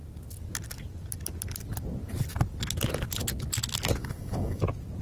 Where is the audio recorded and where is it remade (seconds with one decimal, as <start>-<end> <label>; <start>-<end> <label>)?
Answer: 0.0-4.0 recorded; 4.0-4.6 remade; 4.6-5.0 recorded